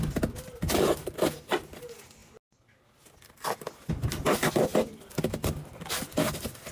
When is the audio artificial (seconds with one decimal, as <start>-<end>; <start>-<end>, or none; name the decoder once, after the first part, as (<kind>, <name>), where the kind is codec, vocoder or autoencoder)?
none

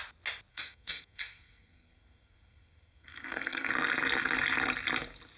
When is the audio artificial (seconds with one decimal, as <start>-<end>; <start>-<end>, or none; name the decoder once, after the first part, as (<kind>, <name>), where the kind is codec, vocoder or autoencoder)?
0.5-3.7 (codec, SNAC)